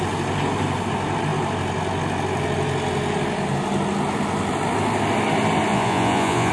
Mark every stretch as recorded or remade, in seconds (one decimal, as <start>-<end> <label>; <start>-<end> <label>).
0.0-5.7 recorded; 5.7-6.5 remade

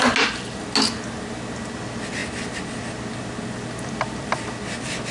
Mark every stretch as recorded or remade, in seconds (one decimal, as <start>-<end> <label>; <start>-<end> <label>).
0.0-5.1 recorded

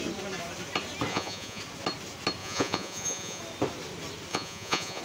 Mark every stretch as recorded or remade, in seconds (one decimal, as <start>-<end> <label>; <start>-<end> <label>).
0.0-1.1 recorded; 1.1-1.6 remade; 1.6-2.4 recorded; 2.4-3.4 remade; 3.4-4.3 recorded; 4.3-5.0 remade

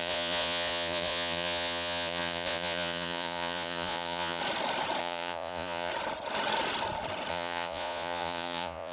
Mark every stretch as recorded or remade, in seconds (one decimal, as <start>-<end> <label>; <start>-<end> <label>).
0.0-4.4 remade; 4.4-5.0 recorded; 5.0-5.9 remade; 5.9-7.3 recorded; 7.3-8.9 remade

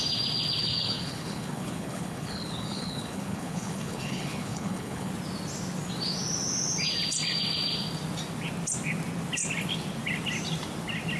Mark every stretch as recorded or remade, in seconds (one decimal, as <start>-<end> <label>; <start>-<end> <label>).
0.0-0.6 recorded; 0.6-5.1 remade; 5.1-11.2 recorded

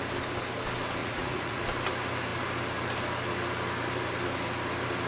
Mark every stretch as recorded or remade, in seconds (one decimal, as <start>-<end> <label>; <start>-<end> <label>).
0.0-1.0 recorded; 1.0-1.6 remade; 1.6-5.1 recorded

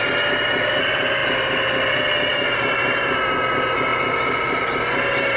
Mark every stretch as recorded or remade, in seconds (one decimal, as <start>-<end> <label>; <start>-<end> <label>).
0.0-5.4 recorded